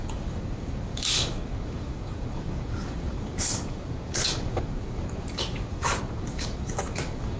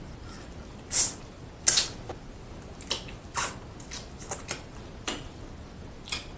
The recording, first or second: second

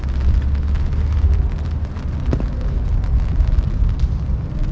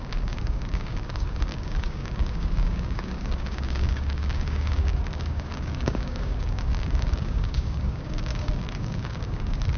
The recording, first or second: first